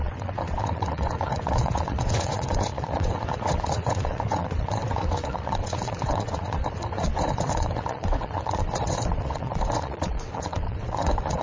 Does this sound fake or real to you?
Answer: fake